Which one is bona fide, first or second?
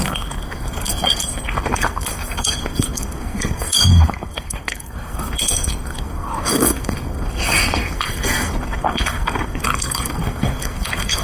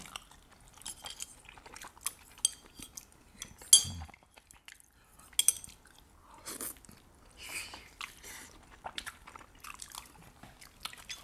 second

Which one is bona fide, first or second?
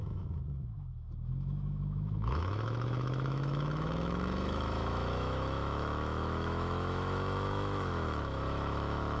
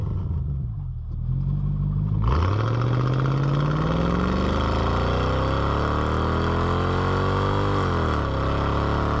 second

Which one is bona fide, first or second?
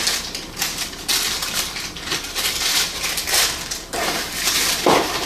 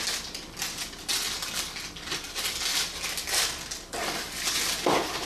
second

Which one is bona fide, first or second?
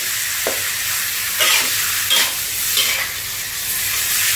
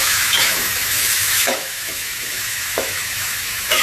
first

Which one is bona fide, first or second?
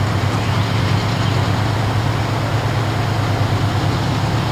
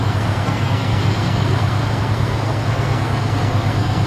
first